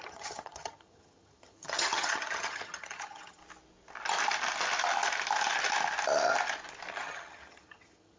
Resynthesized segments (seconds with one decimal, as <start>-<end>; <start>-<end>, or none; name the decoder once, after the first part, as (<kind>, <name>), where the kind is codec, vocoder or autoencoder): 0.0-3.4 (vocoder, HiFi-GAN); 6.9-8.2